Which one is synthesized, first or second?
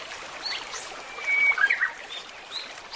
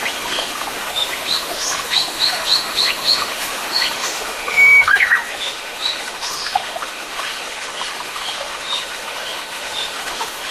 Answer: second